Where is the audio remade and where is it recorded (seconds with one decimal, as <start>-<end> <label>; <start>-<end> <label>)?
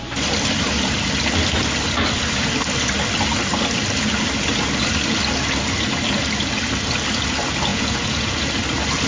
0.0-7.7 recorded; 7.7-8.5 remade; 8.5-9.1 recorded